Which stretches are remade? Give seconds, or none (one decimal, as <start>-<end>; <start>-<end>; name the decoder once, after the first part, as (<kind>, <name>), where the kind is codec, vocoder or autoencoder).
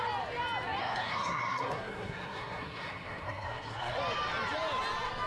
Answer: 0.8-4.0 (codec, SNAC)